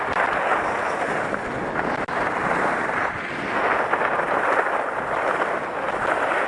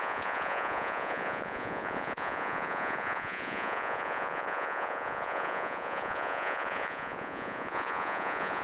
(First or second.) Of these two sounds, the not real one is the second